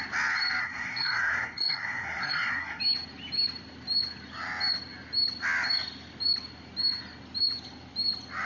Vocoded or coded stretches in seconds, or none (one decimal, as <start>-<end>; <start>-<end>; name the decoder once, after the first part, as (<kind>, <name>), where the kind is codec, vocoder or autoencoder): 0.6-2.8 (codec, SNAC)